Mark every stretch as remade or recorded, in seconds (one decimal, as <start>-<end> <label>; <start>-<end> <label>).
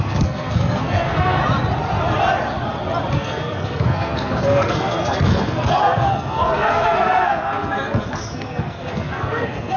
0.0-1.4 remade; 1.4-3.1 recorded; 3.1-9.8 remade